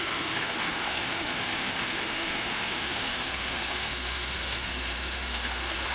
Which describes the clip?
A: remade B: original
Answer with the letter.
A